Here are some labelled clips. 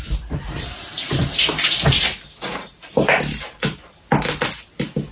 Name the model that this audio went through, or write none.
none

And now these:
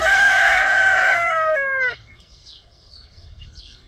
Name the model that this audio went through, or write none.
codec, SNAC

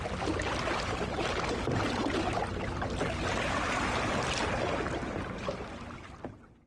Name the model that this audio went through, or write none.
none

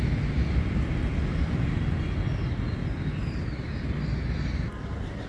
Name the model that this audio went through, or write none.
none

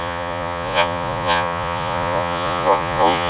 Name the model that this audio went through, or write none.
vocoder, Vocos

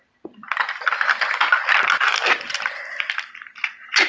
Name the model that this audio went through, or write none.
none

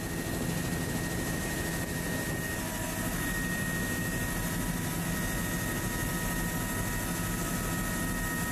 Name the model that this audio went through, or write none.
none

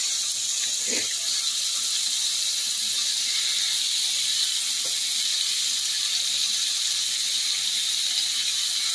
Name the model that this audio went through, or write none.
none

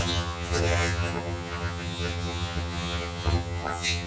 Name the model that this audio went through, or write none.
vocoder, HiFi-GAN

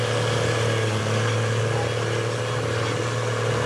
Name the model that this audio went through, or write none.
none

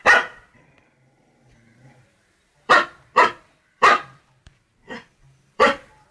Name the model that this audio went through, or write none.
vocoder, BigVGAN v2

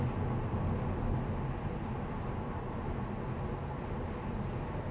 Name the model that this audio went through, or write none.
none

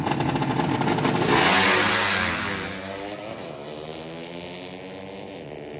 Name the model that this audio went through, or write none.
none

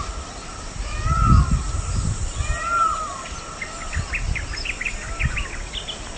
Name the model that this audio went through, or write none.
none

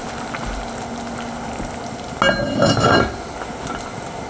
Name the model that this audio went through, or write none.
none